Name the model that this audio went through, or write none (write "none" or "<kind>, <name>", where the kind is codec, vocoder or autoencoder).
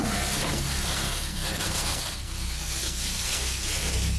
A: codec, SNAC